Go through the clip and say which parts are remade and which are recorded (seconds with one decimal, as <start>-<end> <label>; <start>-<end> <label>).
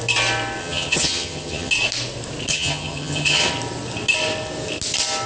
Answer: 0.0-0.6 recorded; 0.6-1.7 remade; 1.7-2.5 recorded; 2.5-3.5 remade; 3.5-5.3 recorded